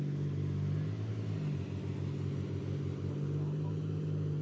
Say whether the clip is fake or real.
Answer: real